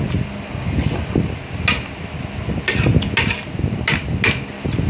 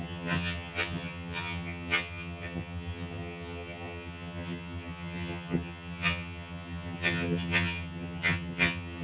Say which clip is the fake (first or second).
second